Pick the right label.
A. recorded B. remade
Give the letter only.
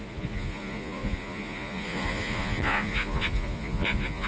B